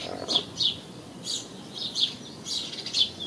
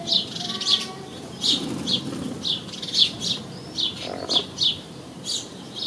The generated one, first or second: first